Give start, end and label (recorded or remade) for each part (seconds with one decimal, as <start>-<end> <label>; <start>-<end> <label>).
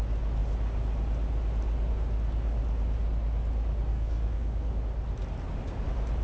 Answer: 0.0-3.9 recorded; 3.9-4.7 remade; 4.7-6.2 recorded